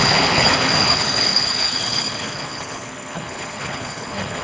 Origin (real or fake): fake